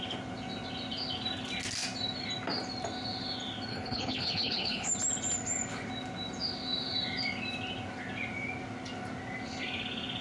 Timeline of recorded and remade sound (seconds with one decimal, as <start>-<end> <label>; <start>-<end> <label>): 0.0-3.7 recorded; 3.7-4.9 remade; 4.9-10.2 recorded